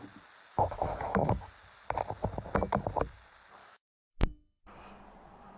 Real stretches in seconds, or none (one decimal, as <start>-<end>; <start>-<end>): 0.0-0.5; 1.5-3.6; 4.6-5.6

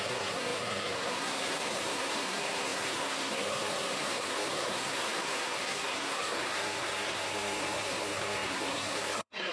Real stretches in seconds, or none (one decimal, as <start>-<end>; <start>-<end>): none

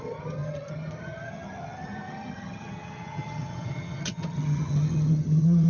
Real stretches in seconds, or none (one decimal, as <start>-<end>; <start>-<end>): none